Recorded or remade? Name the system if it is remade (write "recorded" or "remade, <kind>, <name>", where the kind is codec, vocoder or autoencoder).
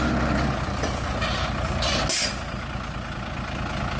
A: recorded